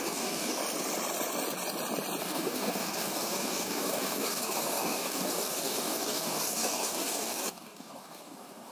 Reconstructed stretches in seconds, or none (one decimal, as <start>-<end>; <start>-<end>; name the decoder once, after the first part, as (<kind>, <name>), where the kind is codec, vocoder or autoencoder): 0.0-0.6 (codec, DAC); 2.2-8.7